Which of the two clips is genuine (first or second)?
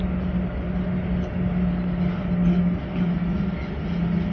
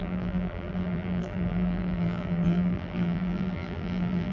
first